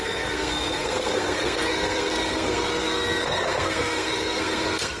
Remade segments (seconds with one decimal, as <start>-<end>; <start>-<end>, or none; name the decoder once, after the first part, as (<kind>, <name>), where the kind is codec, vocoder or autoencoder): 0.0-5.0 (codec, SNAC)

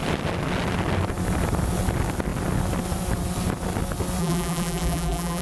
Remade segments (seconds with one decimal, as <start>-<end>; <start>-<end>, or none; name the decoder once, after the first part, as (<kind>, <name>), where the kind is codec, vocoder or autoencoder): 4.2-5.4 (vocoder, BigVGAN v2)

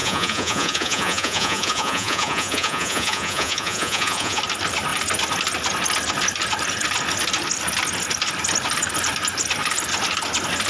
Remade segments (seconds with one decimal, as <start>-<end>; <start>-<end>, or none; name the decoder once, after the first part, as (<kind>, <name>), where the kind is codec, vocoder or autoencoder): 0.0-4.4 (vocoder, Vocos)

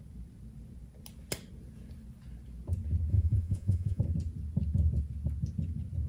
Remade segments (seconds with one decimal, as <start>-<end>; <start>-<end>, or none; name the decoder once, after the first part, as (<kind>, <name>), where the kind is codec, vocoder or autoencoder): 3.1-4.0 (vocoder, Vocos)

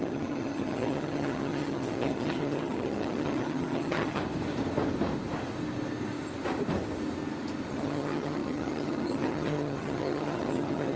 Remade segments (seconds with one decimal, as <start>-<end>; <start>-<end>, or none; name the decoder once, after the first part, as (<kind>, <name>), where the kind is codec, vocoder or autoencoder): 0.0-4.2 (vocoder, HiFi-GAN); 7.7-11.0

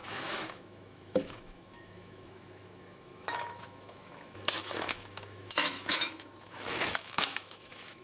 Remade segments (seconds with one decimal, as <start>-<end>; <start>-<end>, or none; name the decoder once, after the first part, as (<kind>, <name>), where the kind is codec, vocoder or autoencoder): 0.0-8.0 (autoencoder, DAC-VAE)

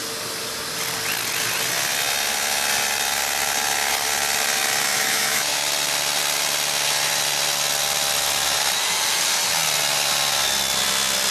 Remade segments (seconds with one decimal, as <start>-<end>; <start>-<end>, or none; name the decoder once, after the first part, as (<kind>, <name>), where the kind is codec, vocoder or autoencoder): 4.9-5.6 (autoencoder, DAC-VAE)